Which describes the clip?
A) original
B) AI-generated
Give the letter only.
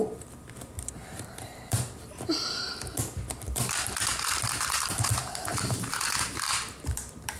B